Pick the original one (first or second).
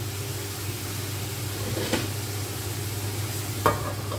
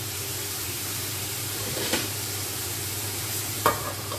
first